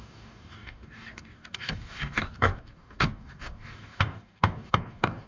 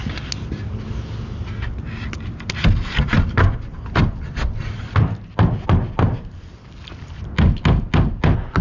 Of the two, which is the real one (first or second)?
second